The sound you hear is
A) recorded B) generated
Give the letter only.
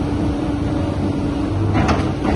A